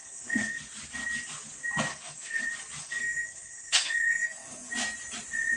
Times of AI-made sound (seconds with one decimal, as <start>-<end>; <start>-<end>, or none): 0.0-0.6; 1.9-2.4; 2.8-4.7